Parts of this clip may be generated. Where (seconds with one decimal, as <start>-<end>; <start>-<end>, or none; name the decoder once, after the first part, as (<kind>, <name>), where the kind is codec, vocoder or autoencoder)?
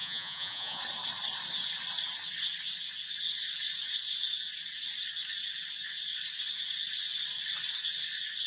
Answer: 0.0-0.8 (vocoder, Vocos)